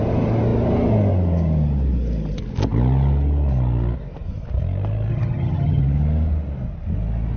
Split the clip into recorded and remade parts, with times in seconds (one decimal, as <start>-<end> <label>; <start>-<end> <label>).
0.0-5.1 recorded; 5.1-5.8 remade; 5.8-7.4 recorded